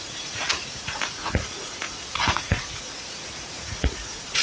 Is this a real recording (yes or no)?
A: no